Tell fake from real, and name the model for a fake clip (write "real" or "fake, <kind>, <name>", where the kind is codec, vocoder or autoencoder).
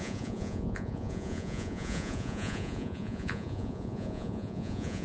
fake, vocoder, Vocos